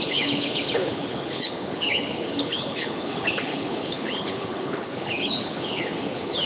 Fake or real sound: fake